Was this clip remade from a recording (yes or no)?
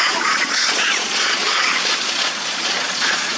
yes